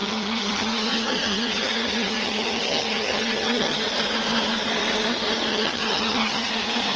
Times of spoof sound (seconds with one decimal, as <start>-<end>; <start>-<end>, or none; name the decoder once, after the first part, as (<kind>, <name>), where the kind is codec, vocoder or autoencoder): 0.0-3.8 (vocoder, HiFi-GAN); 5.5-6.5